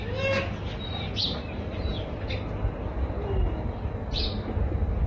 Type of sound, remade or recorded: recorded